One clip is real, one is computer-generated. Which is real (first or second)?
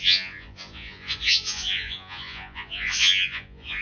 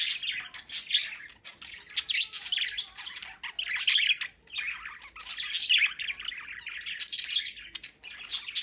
second